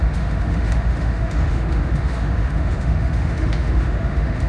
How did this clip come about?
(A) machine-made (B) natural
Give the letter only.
A